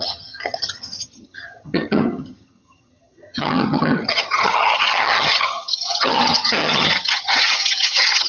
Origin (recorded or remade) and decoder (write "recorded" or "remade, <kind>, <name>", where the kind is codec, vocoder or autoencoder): remade, vocoder, HiFi-GAN